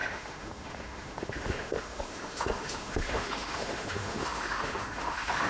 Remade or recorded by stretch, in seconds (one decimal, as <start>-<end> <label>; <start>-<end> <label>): 0.0-5.5 remade